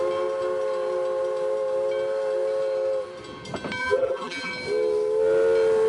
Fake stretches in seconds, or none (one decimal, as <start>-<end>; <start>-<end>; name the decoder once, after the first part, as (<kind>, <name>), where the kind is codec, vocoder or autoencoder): 3.8-4.5 (vocoder, BigVGAN v2)